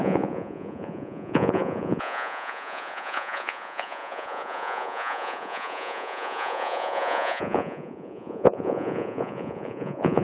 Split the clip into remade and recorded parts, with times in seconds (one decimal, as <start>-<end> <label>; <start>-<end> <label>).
0.0-10.2 remade